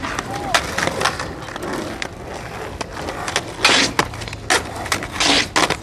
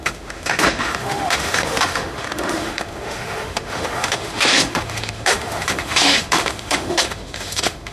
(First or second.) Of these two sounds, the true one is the first